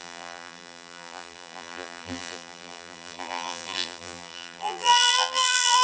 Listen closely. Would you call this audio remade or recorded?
remade